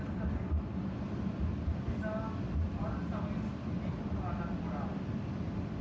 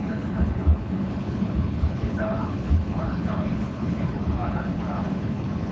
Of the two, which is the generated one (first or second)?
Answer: second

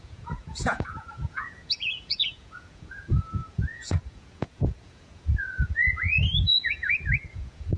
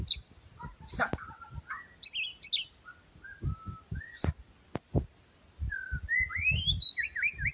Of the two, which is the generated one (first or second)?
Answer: first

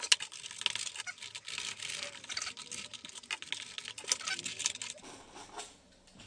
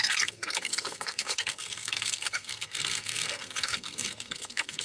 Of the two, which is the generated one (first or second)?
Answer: second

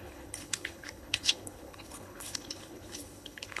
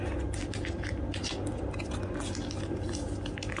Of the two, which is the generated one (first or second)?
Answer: first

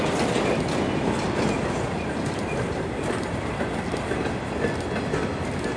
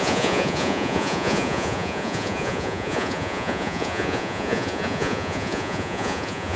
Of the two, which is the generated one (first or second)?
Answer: second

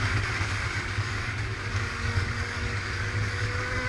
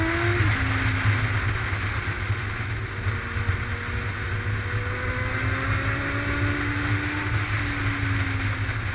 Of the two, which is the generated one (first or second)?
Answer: first